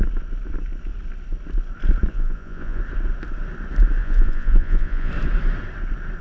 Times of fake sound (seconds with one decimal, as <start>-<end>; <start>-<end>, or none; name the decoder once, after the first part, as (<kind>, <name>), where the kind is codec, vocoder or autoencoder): 2.1-2.8 (vocoder, Vocos); 4.0-5.1